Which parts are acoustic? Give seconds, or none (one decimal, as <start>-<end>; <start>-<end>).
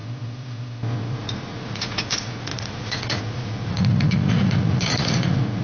0.0-1.0